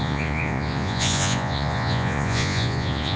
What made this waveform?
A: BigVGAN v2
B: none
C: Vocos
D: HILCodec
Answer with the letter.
C